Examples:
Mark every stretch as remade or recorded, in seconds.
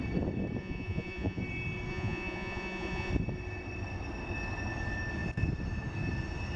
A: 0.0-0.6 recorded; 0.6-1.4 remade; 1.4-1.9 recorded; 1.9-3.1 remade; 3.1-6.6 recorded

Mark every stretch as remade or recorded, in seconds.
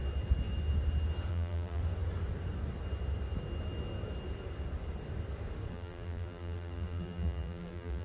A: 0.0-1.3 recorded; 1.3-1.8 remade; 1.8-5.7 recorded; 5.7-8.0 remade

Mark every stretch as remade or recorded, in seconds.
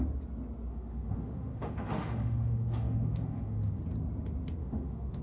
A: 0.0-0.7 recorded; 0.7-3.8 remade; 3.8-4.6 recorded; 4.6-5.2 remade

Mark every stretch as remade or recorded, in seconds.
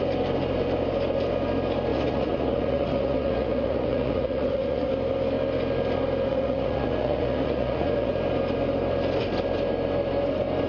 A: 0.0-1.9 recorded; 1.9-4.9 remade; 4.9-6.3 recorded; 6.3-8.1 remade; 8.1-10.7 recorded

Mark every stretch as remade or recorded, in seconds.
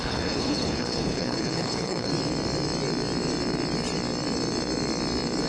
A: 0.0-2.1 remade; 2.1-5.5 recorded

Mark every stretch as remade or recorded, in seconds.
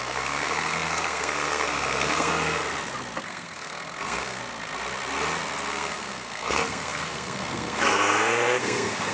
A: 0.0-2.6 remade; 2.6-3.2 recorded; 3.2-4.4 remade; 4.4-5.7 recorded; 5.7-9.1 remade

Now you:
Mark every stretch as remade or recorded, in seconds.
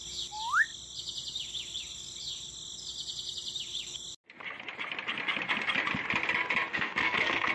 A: 0.0-6.7 recorded; 6.7-7.5 remade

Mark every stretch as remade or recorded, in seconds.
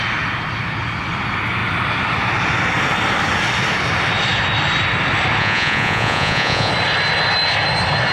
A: 0.0-5.4 recorded; 5.4-6.7 remade; 6.7-8.1 recorded